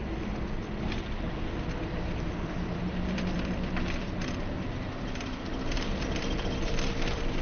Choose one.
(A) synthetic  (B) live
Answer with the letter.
A